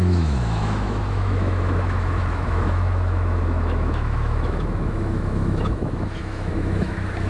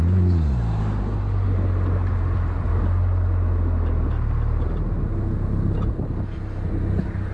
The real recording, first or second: second